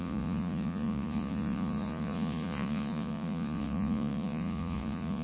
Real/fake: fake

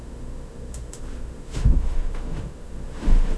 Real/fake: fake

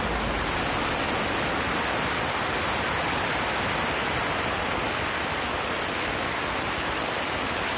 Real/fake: real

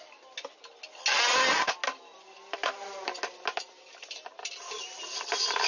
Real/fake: real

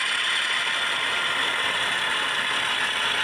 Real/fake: real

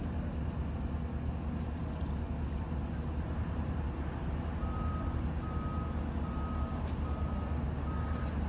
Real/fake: real